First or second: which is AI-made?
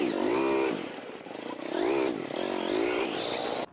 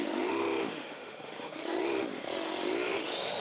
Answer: second